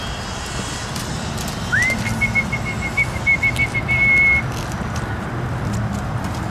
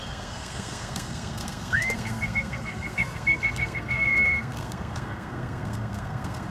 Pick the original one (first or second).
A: first